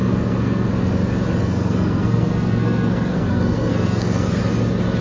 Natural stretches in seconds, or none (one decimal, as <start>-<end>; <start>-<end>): 0.7-1.4; 4.4-5.0

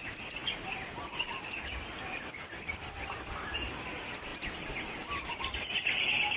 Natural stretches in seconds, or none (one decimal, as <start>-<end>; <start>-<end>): 0.0-6.4

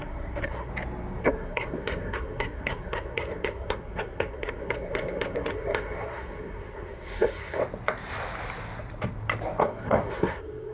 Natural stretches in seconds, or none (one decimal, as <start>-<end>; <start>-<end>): 0.7-1.2; 7.6-9.6